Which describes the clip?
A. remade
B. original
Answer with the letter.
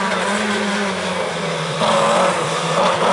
A